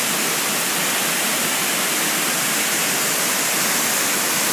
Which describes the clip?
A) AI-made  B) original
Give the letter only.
B